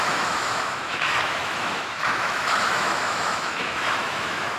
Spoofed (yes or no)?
yes